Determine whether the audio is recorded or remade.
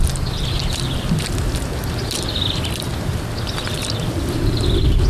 recorded